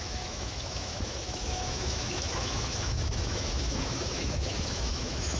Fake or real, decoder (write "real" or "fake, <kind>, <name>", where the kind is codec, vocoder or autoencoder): fake, autoencoder, DAC-VAE